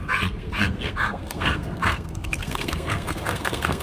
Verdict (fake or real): fake